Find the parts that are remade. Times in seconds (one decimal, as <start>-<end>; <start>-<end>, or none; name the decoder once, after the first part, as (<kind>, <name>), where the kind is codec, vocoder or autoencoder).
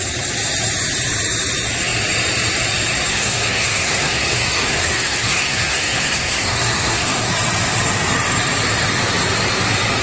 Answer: 3.1-7.3 (codec, SNAC)